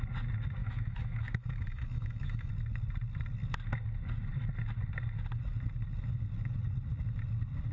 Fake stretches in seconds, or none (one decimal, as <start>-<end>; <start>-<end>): 0.6-2.5